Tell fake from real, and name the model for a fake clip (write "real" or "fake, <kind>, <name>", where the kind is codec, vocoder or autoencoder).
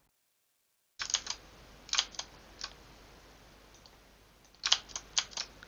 real